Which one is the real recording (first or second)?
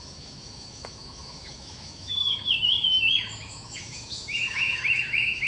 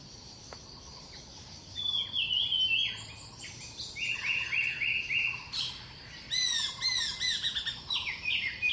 second